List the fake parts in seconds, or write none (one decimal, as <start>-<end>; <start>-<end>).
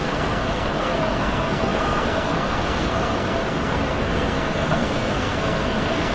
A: 0.0-6.1